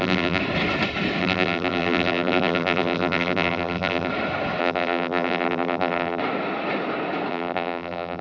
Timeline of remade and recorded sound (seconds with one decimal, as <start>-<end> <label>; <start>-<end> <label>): 0.0-0.4 remade; 0.4-1.2 recorded; 1.2-4.1 remade; 4.1-4.6 recorded; 4.6-6.2 remade; 6.2-7.3 recorded; 7.3-8.2 remade